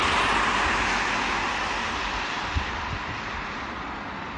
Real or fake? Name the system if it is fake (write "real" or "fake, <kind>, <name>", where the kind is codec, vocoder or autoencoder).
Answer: real